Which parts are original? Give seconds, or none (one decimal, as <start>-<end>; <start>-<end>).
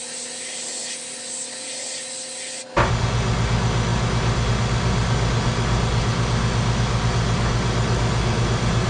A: 0.0-8.9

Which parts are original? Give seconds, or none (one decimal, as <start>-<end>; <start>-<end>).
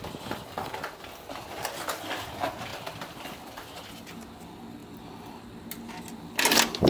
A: 0.0-6.9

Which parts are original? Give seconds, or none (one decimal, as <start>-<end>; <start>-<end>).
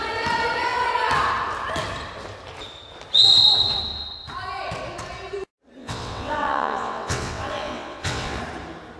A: 0.0-5.8; 8.4-9.0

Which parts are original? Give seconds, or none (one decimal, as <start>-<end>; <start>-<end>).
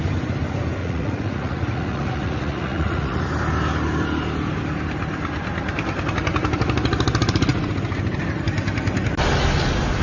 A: 0.0-0.8; 3.2-10.0